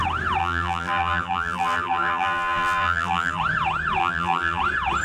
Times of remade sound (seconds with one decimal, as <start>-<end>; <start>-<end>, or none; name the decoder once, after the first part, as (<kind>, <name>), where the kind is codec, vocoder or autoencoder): 0.4-3.4 (vocoder, BigVGAN v2); 4.0-4.6